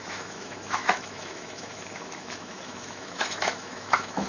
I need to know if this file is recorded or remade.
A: remade